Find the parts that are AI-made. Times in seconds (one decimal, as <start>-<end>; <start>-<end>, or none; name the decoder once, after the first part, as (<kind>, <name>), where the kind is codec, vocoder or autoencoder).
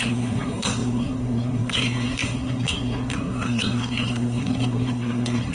0.0-5.5 (codec, SNAC)